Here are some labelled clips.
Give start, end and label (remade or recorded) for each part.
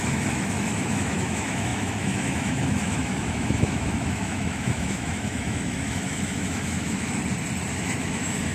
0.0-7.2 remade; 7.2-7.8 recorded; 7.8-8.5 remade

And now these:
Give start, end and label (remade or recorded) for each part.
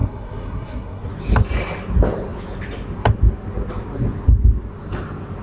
0.0-1.1 remade; 1.1-5.4 recorded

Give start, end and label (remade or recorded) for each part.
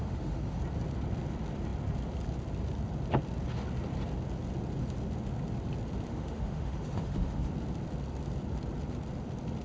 0.0-0.6 remade; 0.6-6.1 recorded; 6.1-7.5 remade; 7.5-9.6 recorded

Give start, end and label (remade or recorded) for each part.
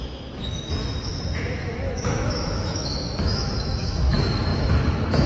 0.0-5.3 remade